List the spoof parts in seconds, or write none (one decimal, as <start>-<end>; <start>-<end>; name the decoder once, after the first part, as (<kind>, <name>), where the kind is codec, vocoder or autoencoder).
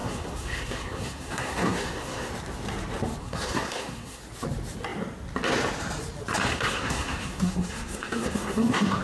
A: 0.0-2.3 (codec, SNAC); 3.2-4.2; 6.5-9.0